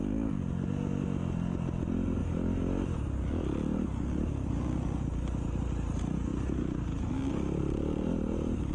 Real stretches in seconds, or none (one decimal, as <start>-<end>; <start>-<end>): 0.0-8.7